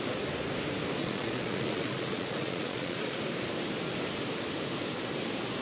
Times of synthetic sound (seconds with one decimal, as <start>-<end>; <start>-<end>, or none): 1.0-3.2